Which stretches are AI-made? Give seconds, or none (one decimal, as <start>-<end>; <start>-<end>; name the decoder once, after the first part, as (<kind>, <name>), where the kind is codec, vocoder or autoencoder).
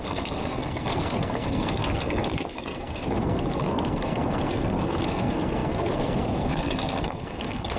0.0-7.8 (codec, SNAC)